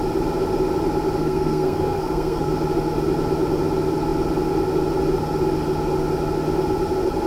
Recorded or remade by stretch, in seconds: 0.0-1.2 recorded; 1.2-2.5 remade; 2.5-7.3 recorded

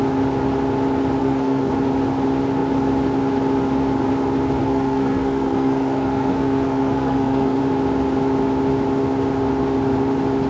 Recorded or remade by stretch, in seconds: 0.0-1.2 recorded; 1.2-1.7 remade; 1.7-4.6 recorded; 4.6-7.6 remade; 7.6-10.5 recorded

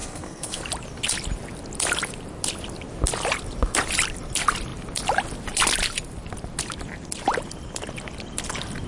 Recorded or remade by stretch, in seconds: 0.0-0.6 remade; 0.6-8.9 recorded

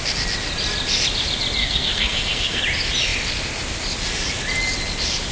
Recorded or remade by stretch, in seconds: 0.0-1.6 recorded; 1.6-2.6 remade; 2.6-5.3 recorded

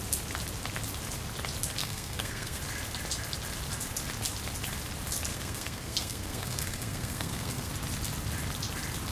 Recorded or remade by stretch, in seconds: 0.0-1.8 recorded; 1.8-2.6 remade; 2.6-5.3 recorded; 5.3-7.7 remade; 7.7-9.1 recorded